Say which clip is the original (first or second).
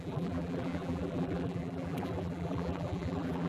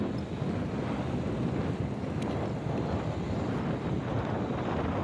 second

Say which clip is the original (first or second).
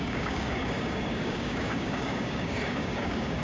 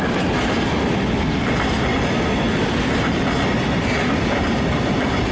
second